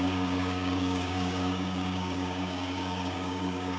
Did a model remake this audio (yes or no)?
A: yes